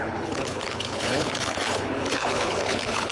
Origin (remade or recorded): remade